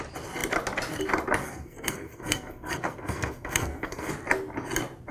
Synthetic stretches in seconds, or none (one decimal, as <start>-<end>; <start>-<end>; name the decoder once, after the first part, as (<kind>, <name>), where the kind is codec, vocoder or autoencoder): 1.4-4.1 (codec, SNAC)